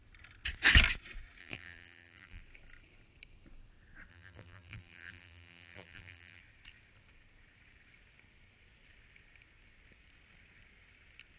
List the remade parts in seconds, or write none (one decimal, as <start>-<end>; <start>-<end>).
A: 1.4-2.4; 4.1-6.4